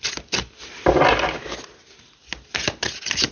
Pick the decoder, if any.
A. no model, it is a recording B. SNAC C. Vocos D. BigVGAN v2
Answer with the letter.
A